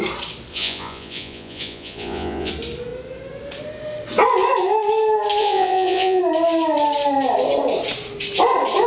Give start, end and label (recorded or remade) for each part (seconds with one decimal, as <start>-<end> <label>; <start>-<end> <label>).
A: 0.0-0.5 recorded; 0.5-2.5 remade; 2.5-5.4 recorded; 5.4-6.2 remade; 6.2-8.9 recorded